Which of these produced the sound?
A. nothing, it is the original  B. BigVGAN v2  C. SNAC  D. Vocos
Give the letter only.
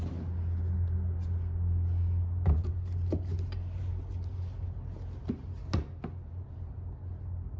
A